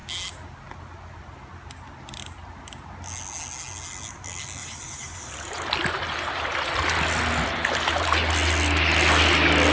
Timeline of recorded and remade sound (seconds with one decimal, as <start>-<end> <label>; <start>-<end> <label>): 0.0-4.6 recorded; 4.6-5.6 remade; 5.6-9.7 recorded